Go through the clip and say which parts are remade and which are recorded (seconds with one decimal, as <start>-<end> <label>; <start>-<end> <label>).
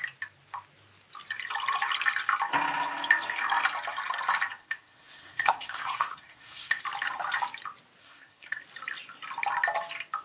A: 0.0-4.6 recorded; 4.6-6.8 remade; 6.8-8.0 recorded; 8.0-8.6 remade; 8.6-10.2 recorded